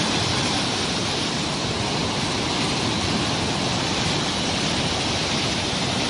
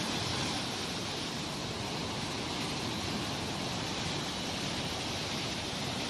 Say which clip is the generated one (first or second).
first